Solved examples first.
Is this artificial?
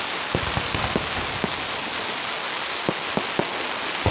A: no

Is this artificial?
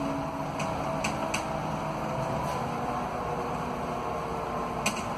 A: no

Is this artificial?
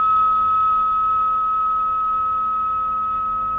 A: yes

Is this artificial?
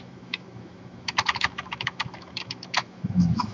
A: yes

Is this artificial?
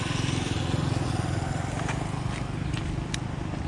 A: no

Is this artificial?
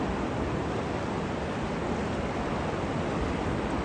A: no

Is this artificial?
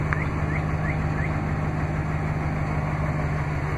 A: no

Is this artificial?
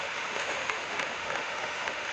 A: yes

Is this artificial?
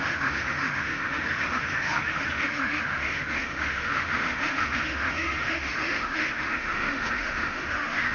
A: yes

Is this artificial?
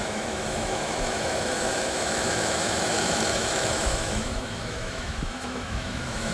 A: yes